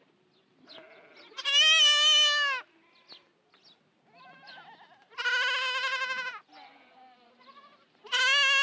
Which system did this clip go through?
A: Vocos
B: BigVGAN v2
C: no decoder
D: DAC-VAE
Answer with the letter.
C